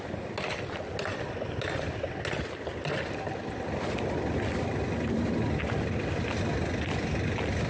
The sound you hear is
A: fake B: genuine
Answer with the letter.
B